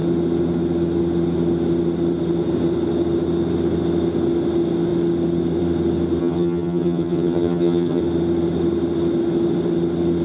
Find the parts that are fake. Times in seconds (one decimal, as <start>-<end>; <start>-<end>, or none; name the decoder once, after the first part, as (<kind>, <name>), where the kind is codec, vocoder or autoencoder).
6.2-8.0 (vocoder, HiFi-GAN)